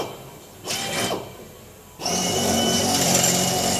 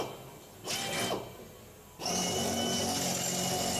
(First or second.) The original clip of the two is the second